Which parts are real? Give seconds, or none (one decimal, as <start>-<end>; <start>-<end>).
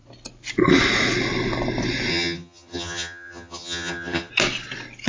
0.0-2.1; 4.3-5.1